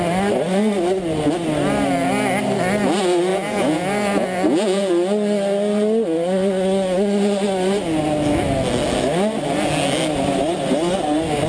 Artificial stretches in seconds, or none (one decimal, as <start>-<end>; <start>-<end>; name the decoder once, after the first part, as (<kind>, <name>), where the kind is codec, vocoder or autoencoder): 3.3-4.9 (vocoder, Vocos)